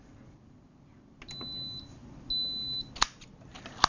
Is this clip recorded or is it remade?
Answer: recorded